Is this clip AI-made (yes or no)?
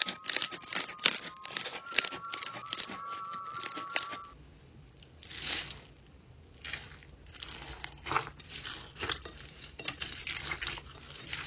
yes